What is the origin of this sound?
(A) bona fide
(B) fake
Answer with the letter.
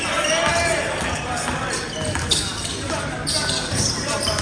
A